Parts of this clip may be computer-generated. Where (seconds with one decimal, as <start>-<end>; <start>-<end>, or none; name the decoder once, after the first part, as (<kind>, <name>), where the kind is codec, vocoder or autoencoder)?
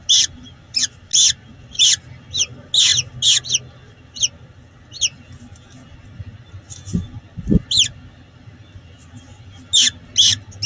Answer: none